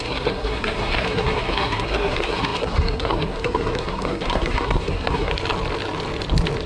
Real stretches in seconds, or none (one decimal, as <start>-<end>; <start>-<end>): 5.3-6.7